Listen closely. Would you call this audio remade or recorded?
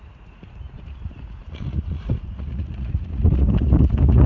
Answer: remade